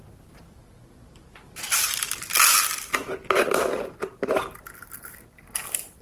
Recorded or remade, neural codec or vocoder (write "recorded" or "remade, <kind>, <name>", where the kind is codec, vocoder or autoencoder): recorded